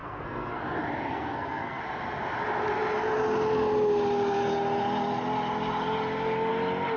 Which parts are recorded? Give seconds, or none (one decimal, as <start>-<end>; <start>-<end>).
0.6-1.1; 1.8-7.0